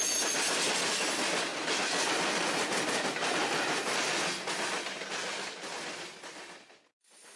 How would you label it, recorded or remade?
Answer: recorded